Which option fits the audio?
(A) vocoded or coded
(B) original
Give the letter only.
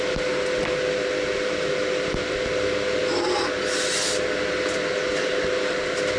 B